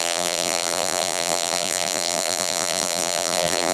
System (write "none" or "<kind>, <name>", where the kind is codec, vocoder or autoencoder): vocoder, BigVGAN v2